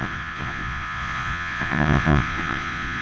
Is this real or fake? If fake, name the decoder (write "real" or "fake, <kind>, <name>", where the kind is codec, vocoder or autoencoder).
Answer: fake, vocoder, Vocos